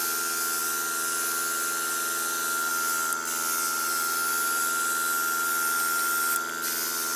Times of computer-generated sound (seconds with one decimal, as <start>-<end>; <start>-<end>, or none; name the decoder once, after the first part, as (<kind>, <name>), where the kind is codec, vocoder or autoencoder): none